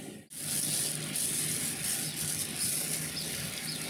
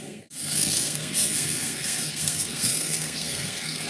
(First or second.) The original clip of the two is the first